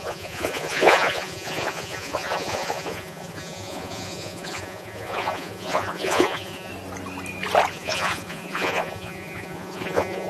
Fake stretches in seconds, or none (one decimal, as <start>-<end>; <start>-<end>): 0.0-6.7; 7.7-10.3